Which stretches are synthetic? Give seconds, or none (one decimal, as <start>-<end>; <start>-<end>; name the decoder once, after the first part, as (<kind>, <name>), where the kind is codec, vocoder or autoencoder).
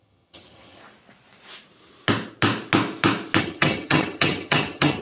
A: 0.0-0.8 (vocoder, HiFi-GAN); 3.4-5.0